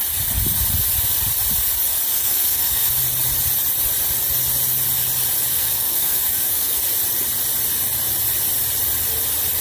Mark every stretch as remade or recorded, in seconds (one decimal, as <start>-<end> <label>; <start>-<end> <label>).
0.0-2.1 recorded; 2.1-2.9 remade; 2.9-5.5 recorded; 5.5-6.8 remade; 6.8-9.6 recorded